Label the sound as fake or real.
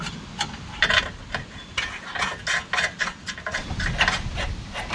real